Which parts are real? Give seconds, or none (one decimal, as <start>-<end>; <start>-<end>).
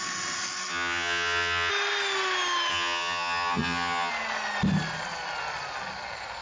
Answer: 0.0-0.7; 1.7-2.7; 4.1-6.4